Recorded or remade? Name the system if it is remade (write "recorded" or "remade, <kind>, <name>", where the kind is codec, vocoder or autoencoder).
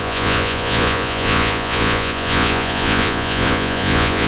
remade, vocoder, Vocos